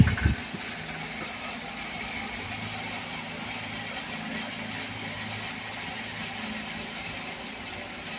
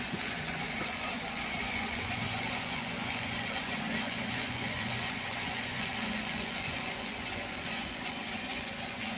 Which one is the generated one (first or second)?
second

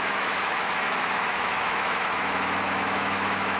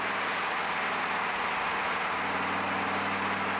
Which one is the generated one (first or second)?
first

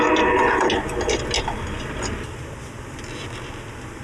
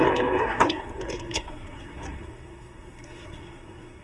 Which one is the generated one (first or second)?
second